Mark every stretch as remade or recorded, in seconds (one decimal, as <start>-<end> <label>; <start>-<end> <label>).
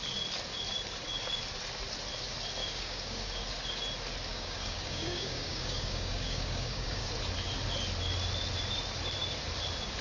0.0-2.6 recorded; 2.6-3.3 remade; 3.3-4.3 recorded; 4.3-7.1 remade; 7.1-10.0 recorded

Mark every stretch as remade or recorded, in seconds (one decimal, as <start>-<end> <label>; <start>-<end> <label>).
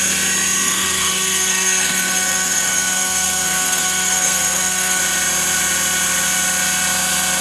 0.0-0.6 recorded; 0.6-5.0 remade; 5.0-7.4 recorded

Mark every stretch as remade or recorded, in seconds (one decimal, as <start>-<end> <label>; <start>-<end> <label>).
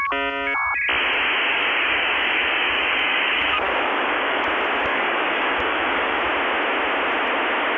0.0-1.5 recorded; 1.5-4.4 remade; 4.4-4.9 recorded; 4.9-6.2 remade; 6.2-7.8 recorded